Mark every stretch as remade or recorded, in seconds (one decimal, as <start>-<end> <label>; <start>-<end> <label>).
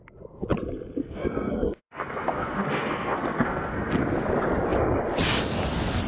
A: 0.0-1.0 recorded; 1.0-4.0 remade; 4.0-6.1 recorded